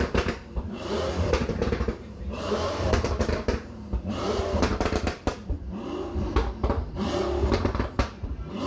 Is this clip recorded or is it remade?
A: remade